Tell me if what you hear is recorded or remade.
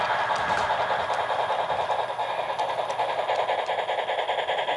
recorded